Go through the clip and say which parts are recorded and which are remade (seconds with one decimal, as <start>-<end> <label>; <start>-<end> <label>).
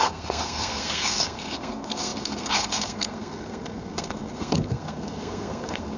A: 0.0-6.0 remade